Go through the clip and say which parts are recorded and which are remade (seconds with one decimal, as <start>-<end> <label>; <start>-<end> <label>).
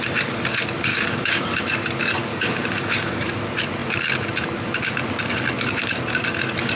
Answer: 0.0-0.9 recorded; 0.9-1.4 remade; 1.4-2.3 recorded; 2.3-3.3 remade; 3.3-6.8 recorded